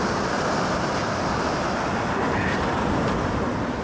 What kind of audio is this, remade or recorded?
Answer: recorded